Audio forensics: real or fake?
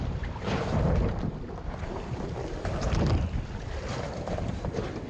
fake